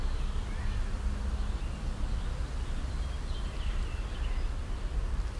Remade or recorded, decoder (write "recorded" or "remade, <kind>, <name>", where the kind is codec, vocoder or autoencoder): recorded